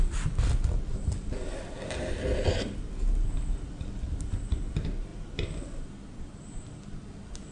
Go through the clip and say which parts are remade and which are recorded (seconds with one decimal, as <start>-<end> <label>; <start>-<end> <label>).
0.0-7.5 recorded

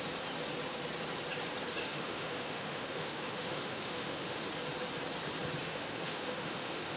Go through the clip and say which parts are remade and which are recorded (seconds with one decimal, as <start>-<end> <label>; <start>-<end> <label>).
0.0-1.8 recorded; 1.8-4.5 remade; 4.5-5.6 recorded; 5.6-7.0 remade

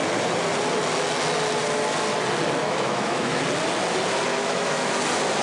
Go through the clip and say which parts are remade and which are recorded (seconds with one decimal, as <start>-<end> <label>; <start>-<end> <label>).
0.0-2.6 recorded; 2.6-3.4 remade; 3.4-4.3 recorded; 4.3-4.9 remade; 4.9-5.4 recorded

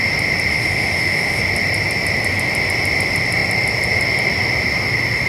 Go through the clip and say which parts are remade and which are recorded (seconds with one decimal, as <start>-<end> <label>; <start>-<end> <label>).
0.0-0.5 recorded; 0.5-1.4 remade; 1.4-5.3 recorded

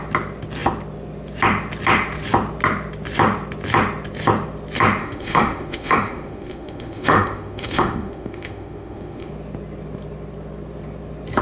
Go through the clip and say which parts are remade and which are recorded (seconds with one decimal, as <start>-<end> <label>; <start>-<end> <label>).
0.0-5.0 recorded; 5.0-9.3 remade; 9.3-11.4 recorded

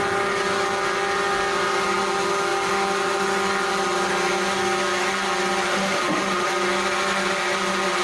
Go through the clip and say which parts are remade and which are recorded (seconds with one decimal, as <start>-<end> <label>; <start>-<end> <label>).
0.0-5.7 recorded; 5.7-6.5 remade; 6.5-8.0 recorded